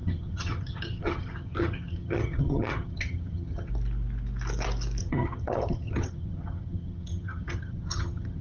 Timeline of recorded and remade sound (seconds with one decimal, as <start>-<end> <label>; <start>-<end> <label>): 0.0-3.7 remade; 3.7-5.0 recorded; 5.0-8.4 remade